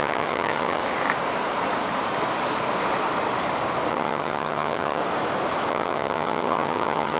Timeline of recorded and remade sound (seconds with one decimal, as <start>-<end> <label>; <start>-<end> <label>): 0.0-0.8 remade; 0.8-3.9 recorded; 3.9-5.0 remade; 5.0-5.7 recorded; 5.7-7.2 remade